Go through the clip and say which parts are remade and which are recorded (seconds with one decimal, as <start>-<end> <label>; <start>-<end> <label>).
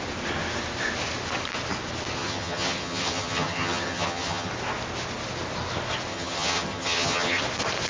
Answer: 0.0-2.2 recorded; 2.2-4.5 remade; 4.5-6.1 recorded; 6.1-7.4 remade; 7.4-7.9 recorded